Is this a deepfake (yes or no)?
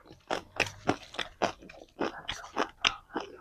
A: no